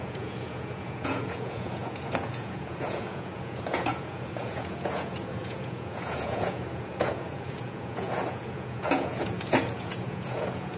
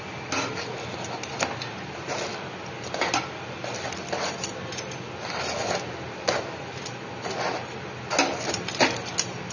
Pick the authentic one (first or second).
second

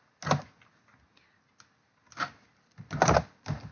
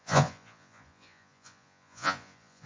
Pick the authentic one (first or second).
first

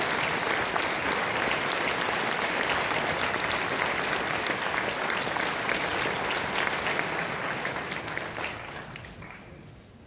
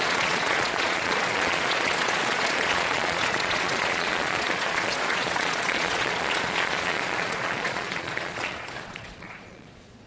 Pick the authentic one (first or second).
first